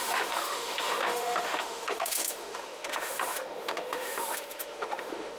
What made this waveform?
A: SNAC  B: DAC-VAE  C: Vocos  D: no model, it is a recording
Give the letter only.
B